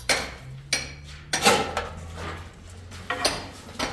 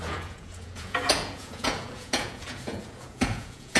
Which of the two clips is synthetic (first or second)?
second